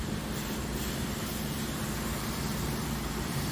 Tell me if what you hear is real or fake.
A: fake